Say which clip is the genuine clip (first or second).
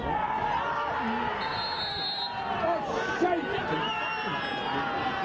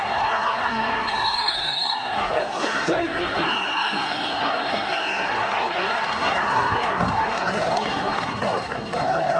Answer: first